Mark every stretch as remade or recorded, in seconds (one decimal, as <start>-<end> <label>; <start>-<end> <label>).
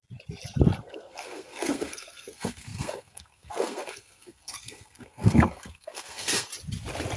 0.0-0.8 recorded; 0.8-6.5 remade; 6.5-7.2 recorded